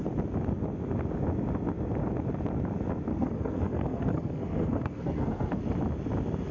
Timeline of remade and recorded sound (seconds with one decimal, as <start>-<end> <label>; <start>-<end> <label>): 0.0-3.1 recorded; 3.1-5.6 remade; 5.6-6.5 recorded